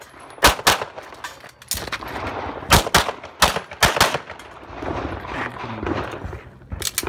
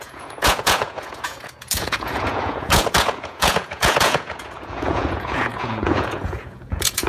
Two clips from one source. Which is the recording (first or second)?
first